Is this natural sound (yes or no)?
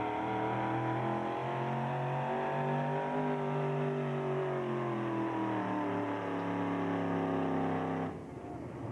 yes